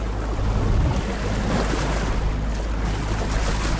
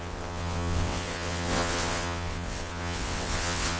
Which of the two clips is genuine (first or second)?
first